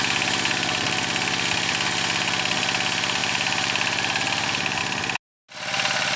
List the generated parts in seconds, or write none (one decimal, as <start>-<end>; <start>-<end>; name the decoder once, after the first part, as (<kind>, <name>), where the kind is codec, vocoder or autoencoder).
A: 3.2-4.8 (vocoder, BigVGAN v2)